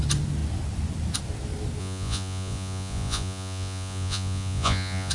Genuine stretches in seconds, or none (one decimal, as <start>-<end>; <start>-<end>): 0.0-1.8